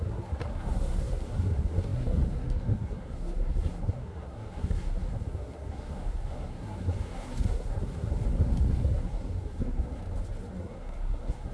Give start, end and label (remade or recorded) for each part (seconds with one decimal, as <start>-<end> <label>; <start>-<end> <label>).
0.0-10.0 remade; 10.0-10.6 recorded; 10.6-11.5 remade